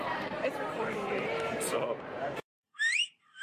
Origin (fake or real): fake